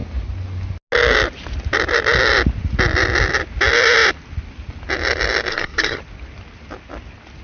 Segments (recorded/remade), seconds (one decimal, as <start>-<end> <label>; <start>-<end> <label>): 0.0-5.5 recorded; 5.5-6.0 remade; 6.0-7.4 recorded